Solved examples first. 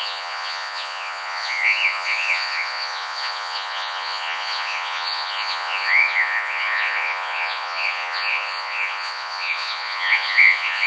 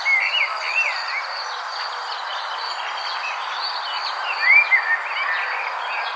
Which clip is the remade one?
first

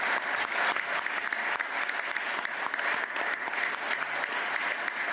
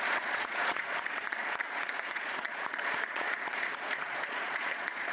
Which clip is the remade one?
second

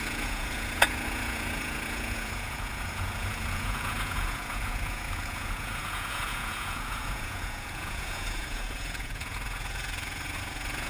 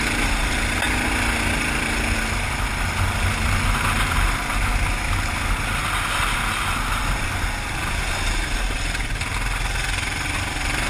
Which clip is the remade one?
first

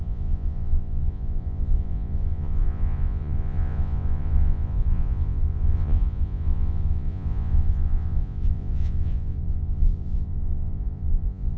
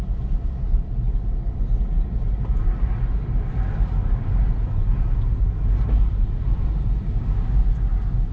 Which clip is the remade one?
first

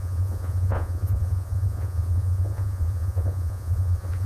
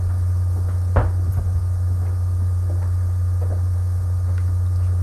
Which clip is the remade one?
first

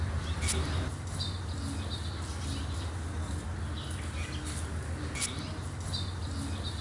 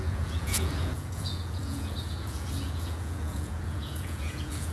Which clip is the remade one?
second